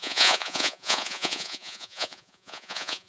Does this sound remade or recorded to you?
remade